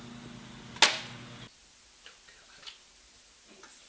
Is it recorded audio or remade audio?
recorded